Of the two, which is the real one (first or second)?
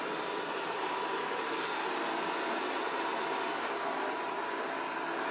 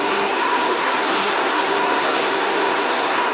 first